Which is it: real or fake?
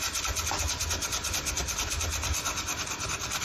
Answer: fake